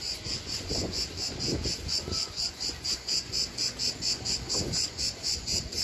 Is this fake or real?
fake